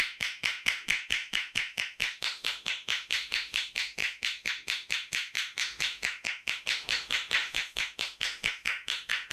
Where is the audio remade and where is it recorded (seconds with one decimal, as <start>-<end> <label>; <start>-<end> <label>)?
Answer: 0.0-9.3 remade